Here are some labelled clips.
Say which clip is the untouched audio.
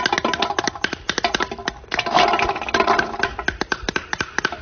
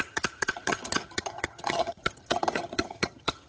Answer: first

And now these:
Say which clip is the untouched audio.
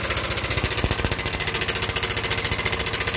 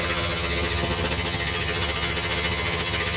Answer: first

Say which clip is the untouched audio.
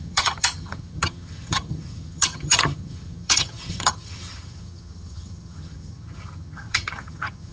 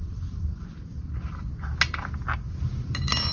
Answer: second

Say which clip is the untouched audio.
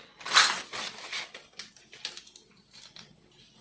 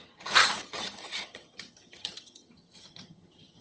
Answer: first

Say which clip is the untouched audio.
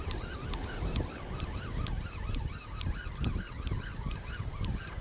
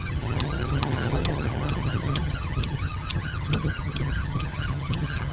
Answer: first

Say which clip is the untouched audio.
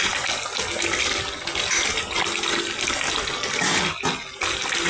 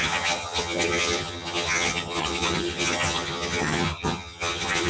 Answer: first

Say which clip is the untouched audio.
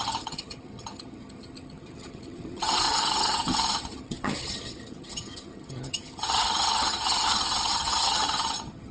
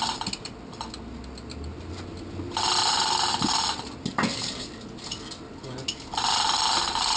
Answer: second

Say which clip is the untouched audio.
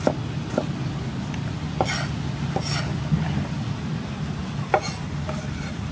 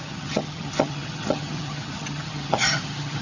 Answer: first